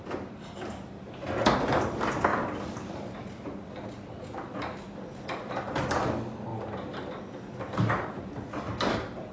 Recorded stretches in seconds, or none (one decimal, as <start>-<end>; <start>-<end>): 0.0-9.3